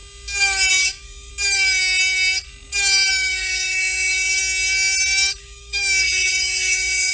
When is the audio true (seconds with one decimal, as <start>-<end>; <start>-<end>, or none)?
0.0-0.7; 1.3-3.1; 4.4-5.4